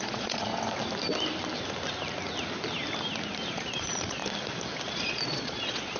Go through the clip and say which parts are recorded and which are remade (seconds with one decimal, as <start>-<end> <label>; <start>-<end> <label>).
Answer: 0.0-0.5 remade; 0.5-3.5 recorded; 3.5-4.2 remade; 4.2-4.8 recorded; 4.8-6.0 remade